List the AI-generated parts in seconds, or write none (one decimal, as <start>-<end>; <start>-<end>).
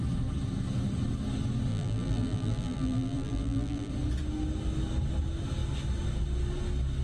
1.7-3.9